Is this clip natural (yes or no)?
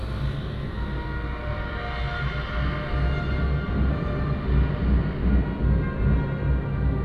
yes